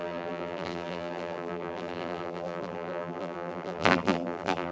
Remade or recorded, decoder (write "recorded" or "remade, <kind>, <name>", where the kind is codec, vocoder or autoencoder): remade, vocoder, BigVGAN v2